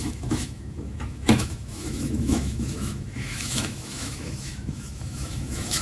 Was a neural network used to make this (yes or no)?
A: yes